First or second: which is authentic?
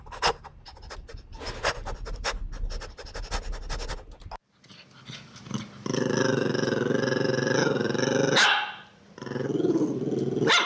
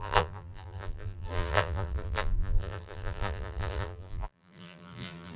first